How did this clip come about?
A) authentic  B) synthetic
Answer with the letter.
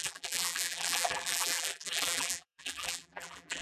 B